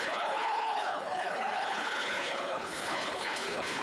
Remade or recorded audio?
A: remade